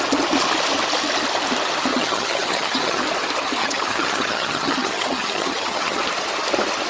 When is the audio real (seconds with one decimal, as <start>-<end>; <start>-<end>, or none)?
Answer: 0.0-1.9; 3.0-3.6; 6.0-6.9